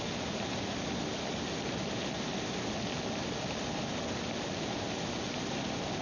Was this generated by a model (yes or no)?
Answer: no